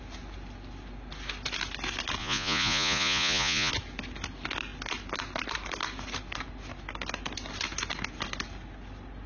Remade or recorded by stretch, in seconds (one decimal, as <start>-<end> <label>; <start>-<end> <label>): 0.0-2.2 recorded; 2.2-3.7 remade; 3.7-9.3 recorded